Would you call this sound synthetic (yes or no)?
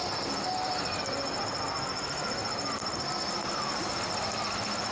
no